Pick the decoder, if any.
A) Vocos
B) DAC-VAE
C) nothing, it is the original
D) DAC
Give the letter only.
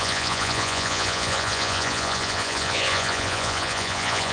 A